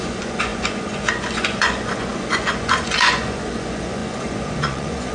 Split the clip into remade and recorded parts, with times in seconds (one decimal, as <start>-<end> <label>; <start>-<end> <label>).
0.0-5.1 remade